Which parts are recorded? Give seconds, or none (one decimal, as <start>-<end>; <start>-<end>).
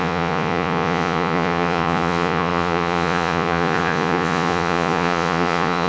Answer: none